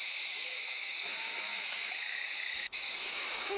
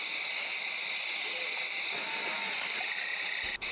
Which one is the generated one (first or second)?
first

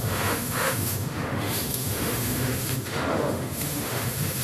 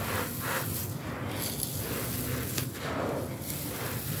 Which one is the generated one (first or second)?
first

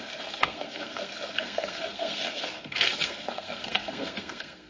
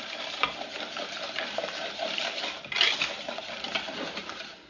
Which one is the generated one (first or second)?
first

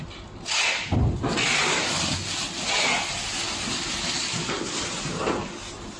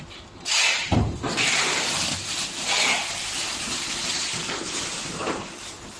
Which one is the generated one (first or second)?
second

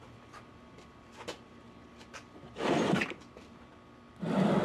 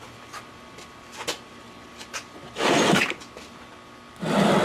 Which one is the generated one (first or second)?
first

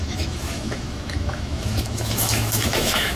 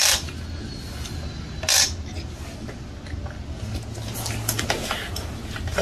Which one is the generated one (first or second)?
first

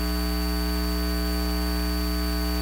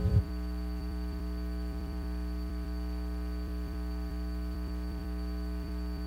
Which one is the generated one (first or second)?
second